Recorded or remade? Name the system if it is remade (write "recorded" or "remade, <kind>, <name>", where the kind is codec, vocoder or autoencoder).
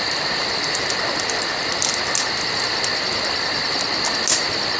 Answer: recorded